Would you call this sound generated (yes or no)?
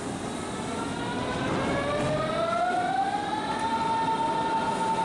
no